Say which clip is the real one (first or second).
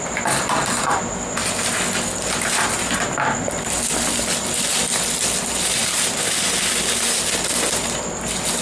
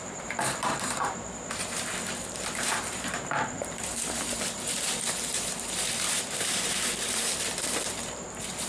first